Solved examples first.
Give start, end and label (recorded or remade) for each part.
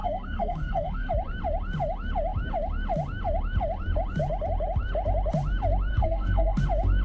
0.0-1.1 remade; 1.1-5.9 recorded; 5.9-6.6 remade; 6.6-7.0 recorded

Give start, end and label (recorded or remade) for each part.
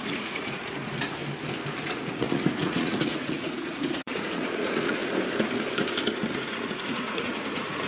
0.0-1.2 remade; 1.2-1.8 recorded; 1.8-5.0 remade; 5.0-6.3 recorded; 6.3-7.9 remade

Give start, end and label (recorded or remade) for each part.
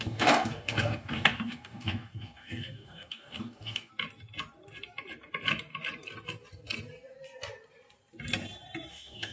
0.0-3.9 remade; 3.9-8.9 recorded; 8.9-9.3 remade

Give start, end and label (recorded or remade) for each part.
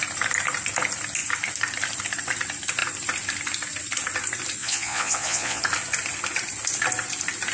0.0-4.6 recorded; 4.6-5.6 remade; 5.6-7.5 recorded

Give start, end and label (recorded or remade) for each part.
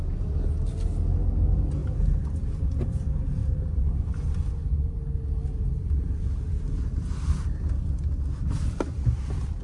0.0-9.6 recorded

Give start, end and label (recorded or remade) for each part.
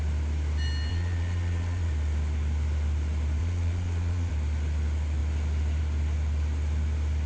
0.0-0.9 recorded; 0.9-1.9 remade; 1.9-3.4 recorded; 3.4-4.3 remade; 4.3-7.3 recorded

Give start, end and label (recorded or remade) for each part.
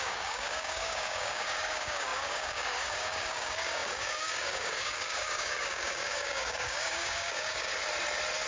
0.0-7.7 remade; 7.7-8.5 recorded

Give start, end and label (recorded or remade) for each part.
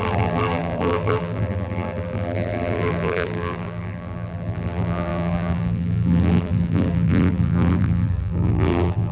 0.0-9.1 remade